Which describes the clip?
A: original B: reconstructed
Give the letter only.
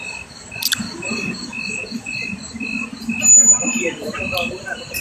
A